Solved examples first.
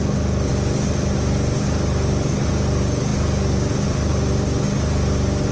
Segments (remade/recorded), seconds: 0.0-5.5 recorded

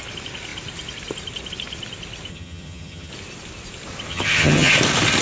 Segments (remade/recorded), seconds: 0.0-2.3 recorded; 2.3-3.1 remade; 3.1-4.1 recorded; 4.1-4.7 remade; 4.7-5.2 recorded

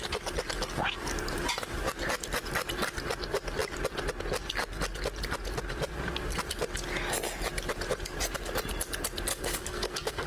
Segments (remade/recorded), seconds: 0.0-9.3 recorded; 9.3-10.3 remade

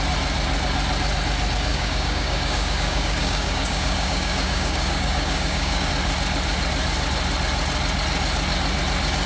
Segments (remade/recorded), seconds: 0.0-1.7 recorded; 1.7-5.9 remade; 5.9-9.3 recorded

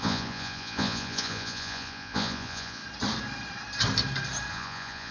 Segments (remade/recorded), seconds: 0.0-2.8 remade; 2.8-4.5 recorded; 4.5-5.1 remade

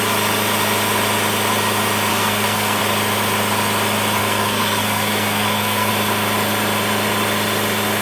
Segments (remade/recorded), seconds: 0.0-2.1 recorded; 2.1-2.8 remade; 2.8-4.2 recorded; 4.2-5.9 remade; 5.9-8.0 recorded